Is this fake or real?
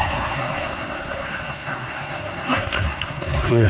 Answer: fake